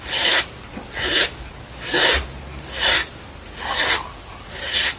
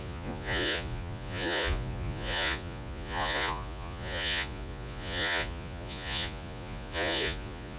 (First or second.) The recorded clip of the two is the first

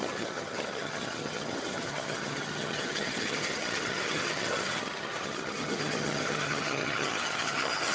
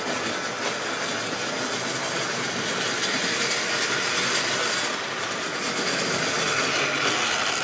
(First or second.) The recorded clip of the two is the second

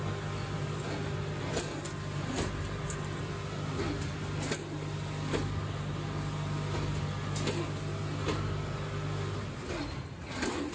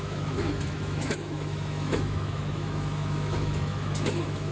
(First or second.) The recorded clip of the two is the first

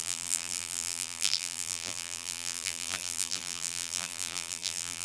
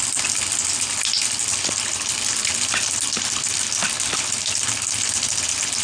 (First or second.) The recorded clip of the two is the second